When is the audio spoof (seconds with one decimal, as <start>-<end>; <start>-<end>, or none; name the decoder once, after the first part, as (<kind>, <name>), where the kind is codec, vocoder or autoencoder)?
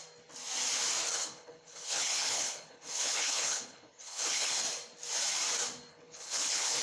1.2-4.6 (codec, HILCodec); 5.9-6.8